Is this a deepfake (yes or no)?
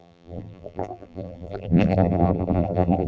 yes